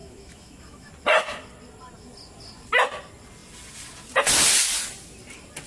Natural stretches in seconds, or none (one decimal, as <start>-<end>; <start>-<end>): 0.9-5.7